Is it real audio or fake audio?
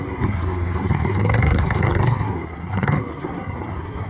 fake